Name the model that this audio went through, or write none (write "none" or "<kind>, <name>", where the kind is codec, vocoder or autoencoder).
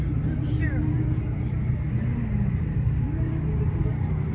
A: none